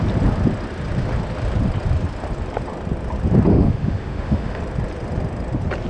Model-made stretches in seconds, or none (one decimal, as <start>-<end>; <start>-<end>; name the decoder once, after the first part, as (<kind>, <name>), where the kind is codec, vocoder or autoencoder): 3.5-4.6 (autoencoder, DAC-VAE)